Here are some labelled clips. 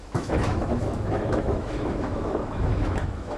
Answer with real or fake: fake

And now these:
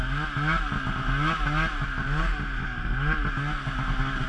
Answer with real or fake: real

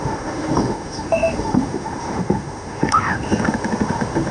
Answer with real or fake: fake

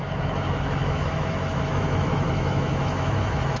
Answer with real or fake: fake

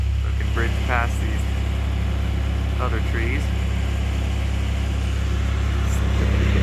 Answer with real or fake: real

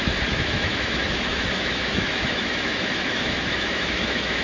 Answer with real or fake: fake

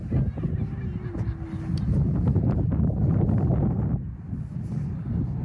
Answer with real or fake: real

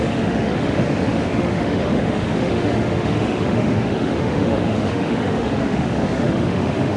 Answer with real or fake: fake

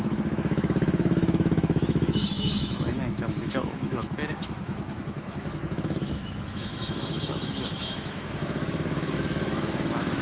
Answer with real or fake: fake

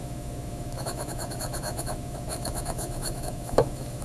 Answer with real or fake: fake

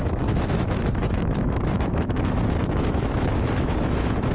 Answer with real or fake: fake